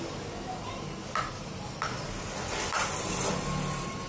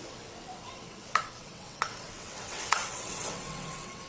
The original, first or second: first